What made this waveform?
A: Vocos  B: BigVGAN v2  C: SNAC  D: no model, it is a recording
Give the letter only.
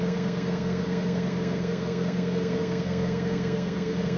C